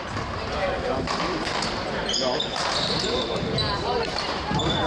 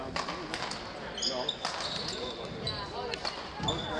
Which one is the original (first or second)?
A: second